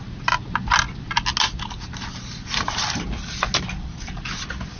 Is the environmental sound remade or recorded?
recorded